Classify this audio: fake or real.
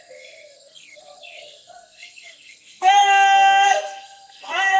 fake